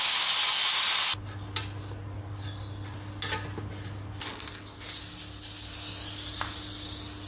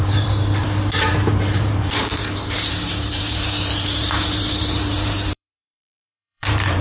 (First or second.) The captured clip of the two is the first